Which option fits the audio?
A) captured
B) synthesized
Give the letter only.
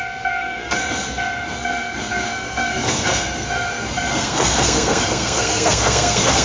B